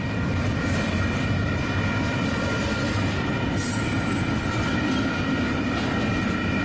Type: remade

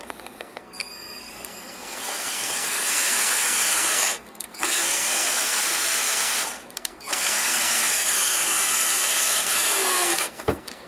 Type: remade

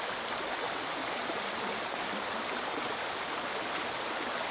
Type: recorded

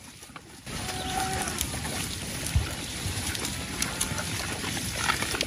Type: remade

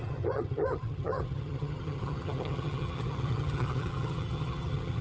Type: remade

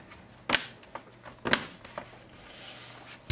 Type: recorded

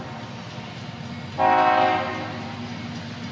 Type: recorded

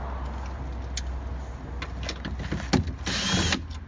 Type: recorded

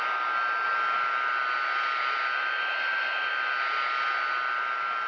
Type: recorded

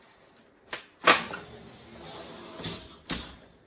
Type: recorded